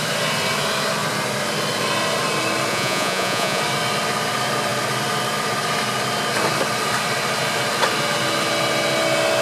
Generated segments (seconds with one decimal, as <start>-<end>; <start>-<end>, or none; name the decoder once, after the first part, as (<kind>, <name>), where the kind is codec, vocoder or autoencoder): 2.7-3.6 (vocoder, Vocos)

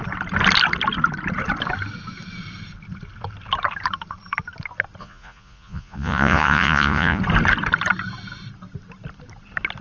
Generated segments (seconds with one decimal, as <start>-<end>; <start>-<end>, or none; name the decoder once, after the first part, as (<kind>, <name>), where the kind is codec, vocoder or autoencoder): 5.0-7.2 (vocoder, Vocos)

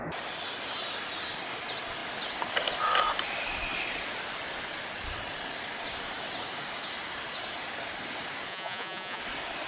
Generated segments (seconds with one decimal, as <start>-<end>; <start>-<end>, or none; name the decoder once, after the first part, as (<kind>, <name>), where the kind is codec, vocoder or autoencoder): 8.5-9.2 (vocoder, Vocos)

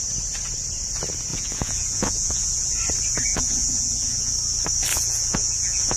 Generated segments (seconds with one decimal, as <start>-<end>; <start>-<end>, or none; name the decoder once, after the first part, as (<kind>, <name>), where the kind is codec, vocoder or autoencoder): 1.3-2.8 (vocoder, Vocos); 3.3-4.3; 4.9-6.0

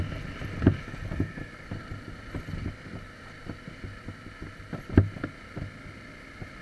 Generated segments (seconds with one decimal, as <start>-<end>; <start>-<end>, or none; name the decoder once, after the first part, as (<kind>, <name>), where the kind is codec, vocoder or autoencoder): none

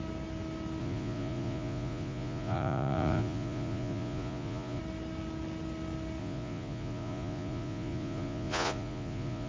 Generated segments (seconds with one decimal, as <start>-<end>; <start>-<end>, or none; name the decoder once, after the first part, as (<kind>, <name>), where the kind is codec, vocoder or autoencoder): 0.8-4.8 (vocoder, Vocos); 6.2-9.5

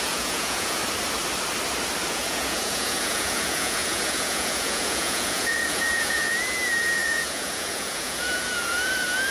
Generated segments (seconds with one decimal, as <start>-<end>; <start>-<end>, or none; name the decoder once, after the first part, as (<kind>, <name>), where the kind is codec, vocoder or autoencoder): 0.0-0.8 (vocoder, Vocos); 2.1-9.3